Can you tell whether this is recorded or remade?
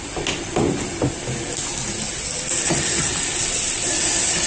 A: recorded